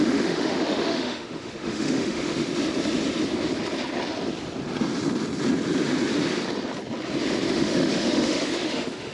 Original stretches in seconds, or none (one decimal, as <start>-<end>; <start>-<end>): 2.5-7.5